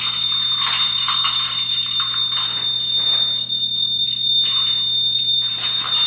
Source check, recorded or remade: remade